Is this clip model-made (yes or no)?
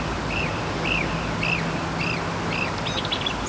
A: no